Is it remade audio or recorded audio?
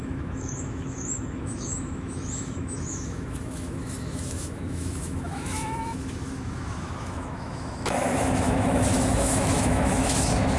remade